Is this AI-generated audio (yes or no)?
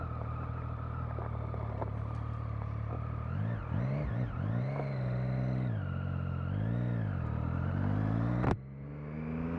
no